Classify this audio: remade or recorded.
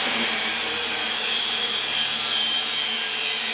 remade